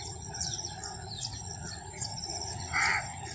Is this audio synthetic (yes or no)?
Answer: yes